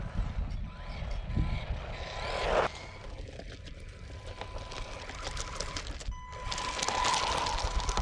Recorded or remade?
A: recorded